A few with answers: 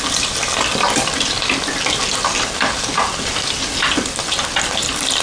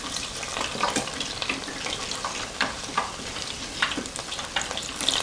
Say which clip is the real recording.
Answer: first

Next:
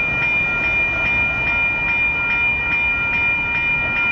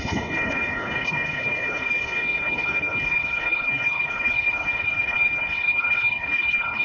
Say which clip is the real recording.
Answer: first